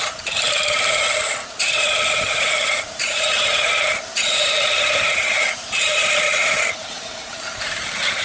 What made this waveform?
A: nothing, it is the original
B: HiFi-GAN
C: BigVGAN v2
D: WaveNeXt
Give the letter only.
C